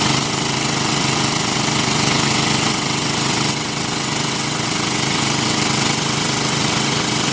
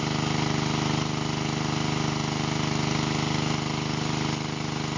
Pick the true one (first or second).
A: second